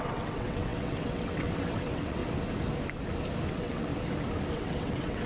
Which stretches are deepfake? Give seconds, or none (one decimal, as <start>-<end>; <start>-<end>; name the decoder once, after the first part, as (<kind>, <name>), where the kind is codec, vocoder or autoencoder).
0.0-2.2 (vocoder, WaveNeXt); 3.5-3.9; 4.5-5.3

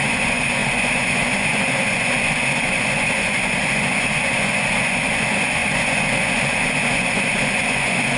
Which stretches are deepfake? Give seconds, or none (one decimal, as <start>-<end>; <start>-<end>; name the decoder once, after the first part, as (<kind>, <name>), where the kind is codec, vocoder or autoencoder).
0.0-8.2 (vocoder, Vocos)

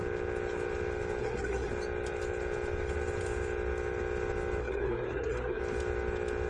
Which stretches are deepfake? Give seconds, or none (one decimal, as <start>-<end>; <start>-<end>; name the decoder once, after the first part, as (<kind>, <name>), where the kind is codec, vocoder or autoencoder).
1.2-1.7 (codec, SNAC); 4.6-5.6

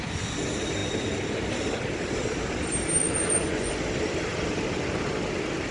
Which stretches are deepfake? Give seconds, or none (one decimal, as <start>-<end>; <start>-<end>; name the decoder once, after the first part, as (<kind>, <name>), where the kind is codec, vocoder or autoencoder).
3.0-3.7 (vocoder, Vocos)

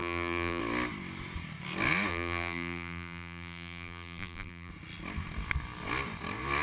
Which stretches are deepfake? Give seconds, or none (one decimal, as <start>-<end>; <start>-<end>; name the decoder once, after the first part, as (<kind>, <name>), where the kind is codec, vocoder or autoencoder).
0.0-0.6 (vocoder, BigVGAN v2); 2.1-4.7

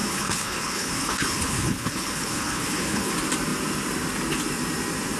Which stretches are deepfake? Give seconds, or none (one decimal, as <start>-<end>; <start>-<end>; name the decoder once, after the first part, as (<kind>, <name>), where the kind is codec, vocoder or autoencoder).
0.0-3.1 (codec, HILCodec)

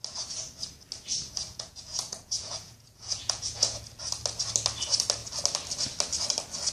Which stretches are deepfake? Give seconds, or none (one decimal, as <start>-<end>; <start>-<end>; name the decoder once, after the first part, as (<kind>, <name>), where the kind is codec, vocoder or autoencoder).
1.5-3.8 (vocoder, Vocos)